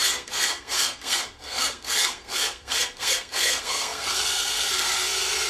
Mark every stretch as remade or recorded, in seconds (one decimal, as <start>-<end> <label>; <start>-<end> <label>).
0.0-5.5 remade